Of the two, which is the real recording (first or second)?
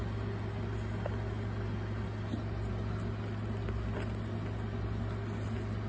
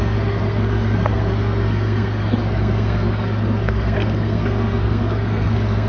first